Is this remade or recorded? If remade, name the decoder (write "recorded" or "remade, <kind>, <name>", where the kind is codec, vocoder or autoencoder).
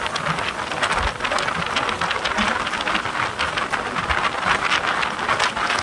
recorded